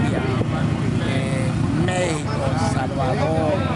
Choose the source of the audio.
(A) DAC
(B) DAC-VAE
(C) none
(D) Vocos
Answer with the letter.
C